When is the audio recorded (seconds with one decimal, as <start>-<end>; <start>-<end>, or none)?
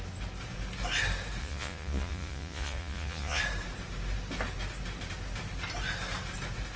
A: 0.0-1.4; 3.4-6.8